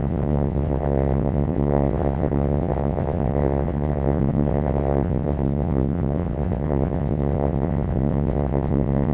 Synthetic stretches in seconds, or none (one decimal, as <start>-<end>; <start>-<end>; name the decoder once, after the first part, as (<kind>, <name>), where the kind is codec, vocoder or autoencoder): 0.0-9.1 (vocoder, WaveNeXt)